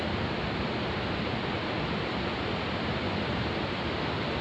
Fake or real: real